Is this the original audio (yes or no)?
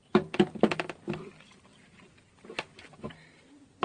yes